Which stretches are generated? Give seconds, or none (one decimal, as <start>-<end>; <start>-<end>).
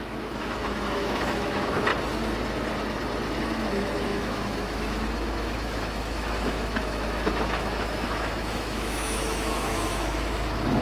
0.0-1.9; 3.4-10.8